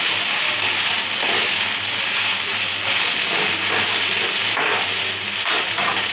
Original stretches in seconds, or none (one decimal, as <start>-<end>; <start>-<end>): 0.0-6.1